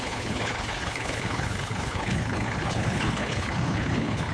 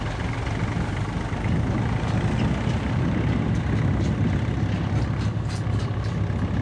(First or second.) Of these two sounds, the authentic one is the second